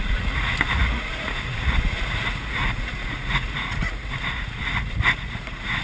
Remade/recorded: remade